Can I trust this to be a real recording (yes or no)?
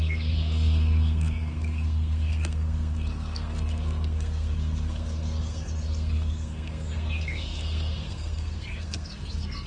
no